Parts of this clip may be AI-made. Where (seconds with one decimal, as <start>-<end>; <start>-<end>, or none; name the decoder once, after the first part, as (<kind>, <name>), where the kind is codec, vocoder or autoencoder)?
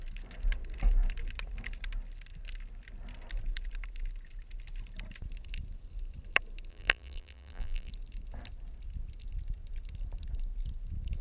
6.7-7.9 (vocoder, BigVGAN v2)